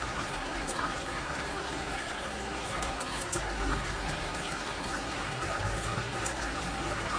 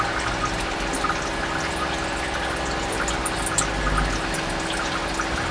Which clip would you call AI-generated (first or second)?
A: first